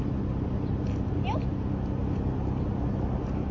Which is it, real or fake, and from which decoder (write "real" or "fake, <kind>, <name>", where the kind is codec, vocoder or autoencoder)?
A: real